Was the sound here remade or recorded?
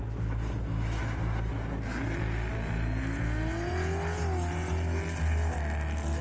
recorded